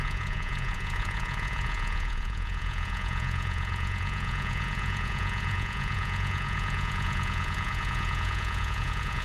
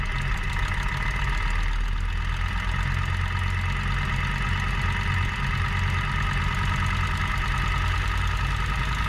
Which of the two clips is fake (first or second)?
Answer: first